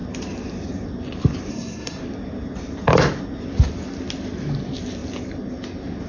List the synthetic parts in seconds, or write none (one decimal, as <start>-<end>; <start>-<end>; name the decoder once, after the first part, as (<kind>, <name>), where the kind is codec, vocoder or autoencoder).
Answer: 1.5-2.0 (codec, SNAC)